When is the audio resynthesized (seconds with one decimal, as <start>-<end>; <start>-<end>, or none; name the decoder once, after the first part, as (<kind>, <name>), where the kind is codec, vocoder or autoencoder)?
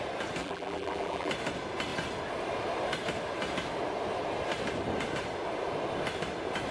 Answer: 0.4-1.3 (vocoder, BigVGAN v2)